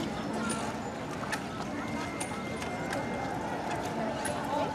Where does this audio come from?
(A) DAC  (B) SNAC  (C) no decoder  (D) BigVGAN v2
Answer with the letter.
C